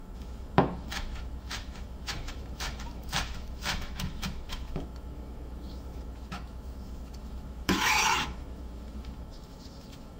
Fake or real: fake